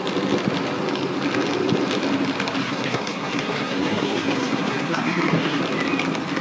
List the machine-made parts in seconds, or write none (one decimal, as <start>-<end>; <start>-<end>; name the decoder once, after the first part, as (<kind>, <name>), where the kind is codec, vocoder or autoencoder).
2.6-5.6 (codec, SNAC)